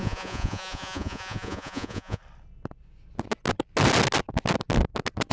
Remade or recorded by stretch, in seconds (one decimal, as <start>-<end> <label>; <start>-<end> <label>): 0.0-2.2 remade; 2.2-5.3 recorded